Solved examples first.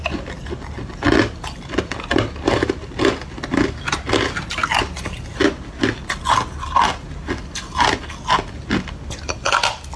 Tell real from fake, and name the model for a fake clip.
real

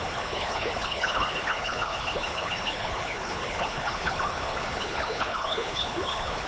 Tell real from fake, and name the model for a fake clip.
fake, codec, HILCodec